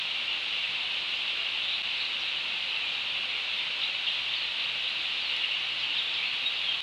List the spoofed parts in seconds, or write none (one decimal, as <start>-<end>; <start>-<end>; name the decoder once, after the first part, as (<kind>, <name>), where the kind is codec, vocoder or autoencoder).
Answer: none